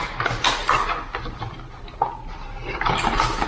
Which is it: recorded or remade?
recorded